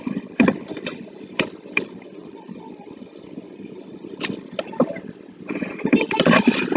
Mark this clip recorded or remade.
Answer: remade